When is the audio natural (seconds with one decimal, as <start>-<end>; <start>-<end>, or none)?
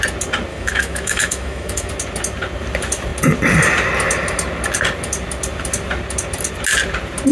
0.0-0.5; 1.9-7.3